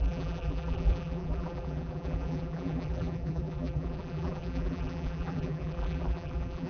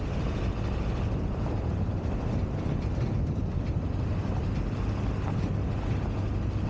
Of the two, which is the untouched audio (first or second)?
second